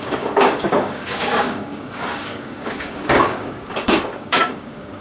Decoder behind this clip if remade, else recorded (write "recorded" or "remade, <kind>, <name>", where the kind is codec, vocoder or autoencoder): remade, codec, DAC